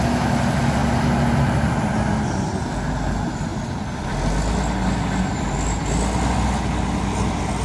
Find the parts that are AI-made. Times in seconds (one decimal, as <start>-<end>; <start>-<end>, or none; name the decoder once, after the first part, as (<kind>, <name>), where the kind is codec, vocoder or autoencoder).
0.8-1.9 (vocoder, BigVGAN v2)